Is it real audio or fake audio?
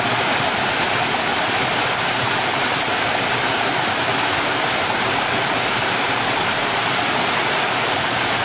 real